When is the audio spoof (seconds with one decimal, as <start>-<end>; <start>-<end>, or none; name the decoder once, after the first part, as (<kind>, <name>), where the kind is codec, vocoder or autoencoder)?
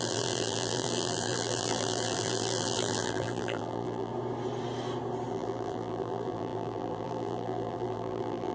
0.0-4.1 (vocoder, BigVGAN v2); 5.3-8.5